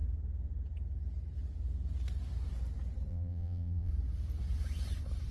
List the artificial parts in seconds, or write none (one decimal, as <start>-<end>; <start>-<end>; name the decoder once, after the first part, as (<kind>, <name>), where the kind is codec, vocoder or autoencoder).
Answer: 3.1-3.9 (vocoder, BigVGAN v2)